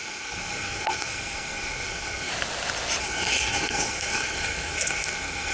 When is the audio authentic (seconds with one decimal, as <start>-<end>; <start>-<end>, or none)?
2.3-3.0